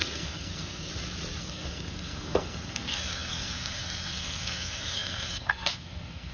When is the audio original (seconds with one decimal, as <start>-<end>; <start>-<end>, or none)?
0.9-1.4